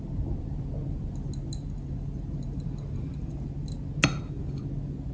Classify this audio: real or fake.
real